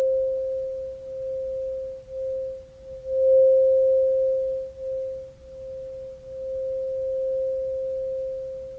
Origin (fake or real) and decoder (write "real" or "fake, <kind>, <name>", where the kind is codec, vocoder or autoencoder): real